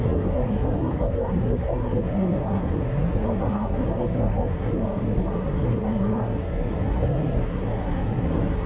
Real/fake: fake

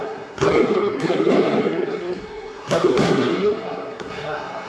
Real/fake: fake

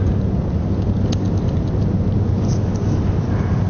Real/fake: real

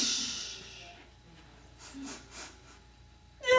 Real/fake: real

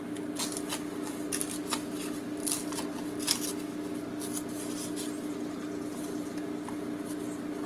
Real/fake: real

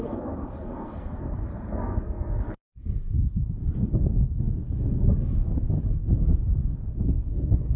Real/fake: fake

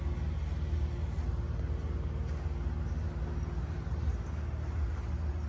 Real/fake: real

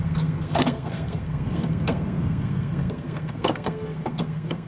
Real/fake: fake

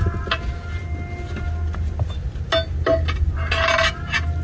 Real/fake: real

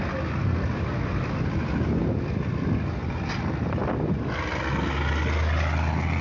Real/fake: real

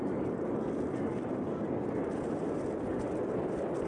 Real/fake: real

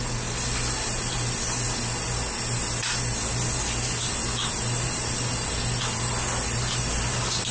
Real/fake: real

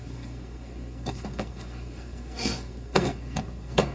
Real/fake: fake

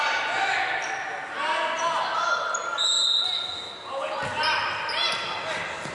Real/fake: real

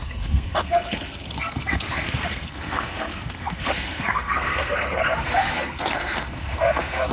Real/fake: fake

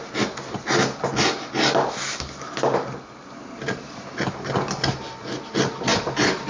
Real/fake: real